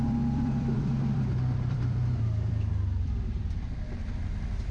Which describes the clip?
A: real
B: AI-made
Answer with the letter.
B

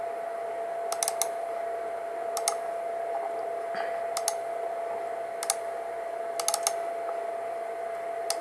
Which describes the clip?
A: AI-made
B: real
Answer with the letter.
B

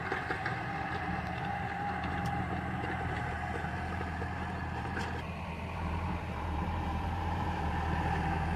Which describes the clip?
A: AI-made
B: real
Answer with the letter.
A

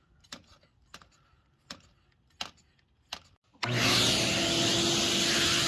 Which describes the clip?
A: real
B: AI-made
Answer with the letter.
A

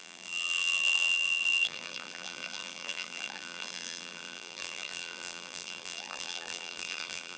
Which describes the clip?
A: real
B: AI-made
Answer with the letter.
B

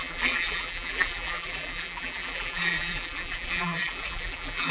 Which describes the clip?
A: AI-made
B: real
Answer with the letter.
A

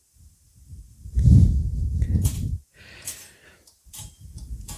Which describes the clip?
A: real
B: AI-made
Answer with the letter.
B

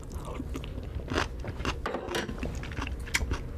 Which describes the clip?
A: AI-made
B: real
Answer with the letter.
B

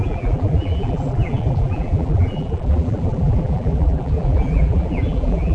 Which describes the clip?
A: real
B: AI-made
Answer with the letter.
B